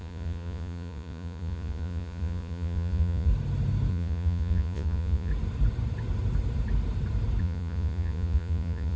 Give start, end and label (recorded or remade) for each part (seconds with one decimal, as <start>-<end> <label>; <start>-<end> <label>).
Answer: 0.0-3.3 remade; 3.3-3.9 recorded; 3.9-5.3 remade; 5.3-7.4 recorded; 7.4-9.0 remade